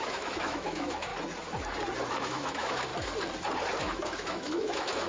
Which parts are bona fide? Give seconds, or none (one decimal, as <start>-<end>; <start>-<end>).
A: 1.1-2.1; 2.9-3.8